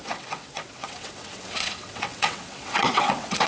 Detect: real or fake fake